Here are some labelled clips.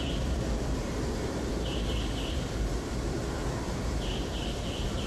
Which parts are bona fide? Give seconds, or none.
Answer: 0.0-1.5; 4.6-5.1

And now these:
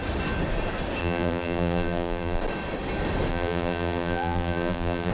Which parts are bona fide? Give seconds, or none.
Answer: 0.0-1.0; 2.4-3.3

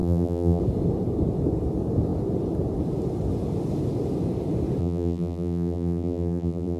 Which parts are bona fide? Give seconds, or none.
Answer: 0.6-4.8

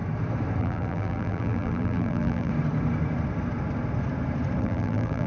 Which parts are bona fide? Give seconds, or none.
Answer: 0.0-0.6; 2.5-4.6